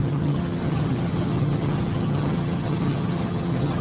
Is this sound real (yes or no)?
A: no